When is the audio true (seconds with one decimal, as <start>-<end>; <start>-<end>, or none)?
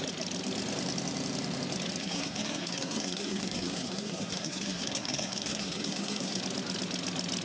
0.0-2.0; 6.4-7.4